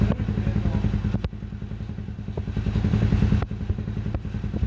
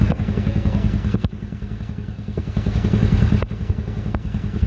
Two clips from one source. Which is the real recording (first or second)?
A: first